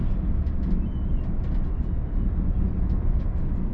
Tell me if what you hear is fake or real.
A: real